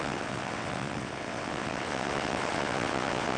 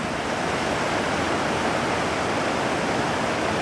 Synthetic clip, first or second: first